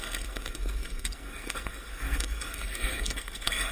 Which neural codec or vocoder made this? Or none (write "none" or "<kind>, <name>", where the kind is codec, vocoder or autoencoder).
codec, SNAC